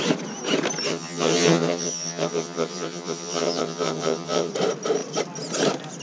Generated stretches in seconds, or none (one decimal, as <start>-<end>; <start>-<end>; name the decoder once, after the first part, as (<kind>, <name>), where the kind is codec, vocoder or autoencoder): 0.9-4.5 (vocoder, HiFi-GAN)